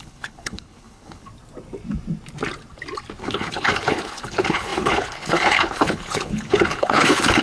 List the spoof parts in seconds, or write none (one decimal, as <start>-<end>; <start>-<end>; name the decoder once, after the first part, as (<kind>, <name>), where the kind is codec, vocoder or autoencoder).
0.0-1.3 (codec, HILCodec); 3.2-7.4